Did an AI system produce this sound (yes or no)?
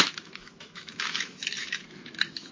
yes